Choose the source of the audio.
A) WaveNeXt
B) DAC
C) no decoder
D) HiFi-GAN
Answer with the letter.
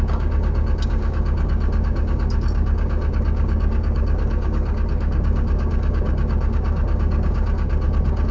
B